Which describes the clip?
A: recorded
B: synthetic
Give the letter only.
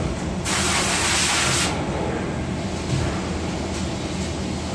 A